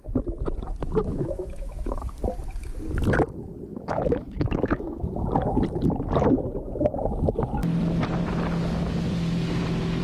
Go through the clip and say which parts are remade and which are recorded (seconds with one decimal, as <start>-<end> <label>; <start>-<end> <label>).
0.0-1.1 recorded; 1.1-2.0 remade; 2.0-3.7 recorded; 3.7-5.3 remade; 5.3-10.0 recorded